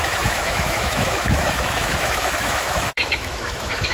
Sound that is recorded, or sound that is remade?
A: remade